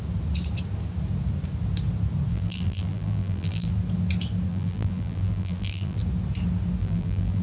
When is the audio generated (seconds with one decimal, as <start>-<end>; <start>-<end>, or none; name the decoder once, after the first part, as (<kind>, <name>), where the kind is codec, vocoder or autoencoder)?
2.3-3.7 (vocoder, BigVGAN v2); 4.5-6.0; 6.8-7.4